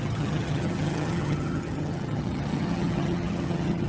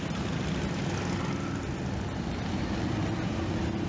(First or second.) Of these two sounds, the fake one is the first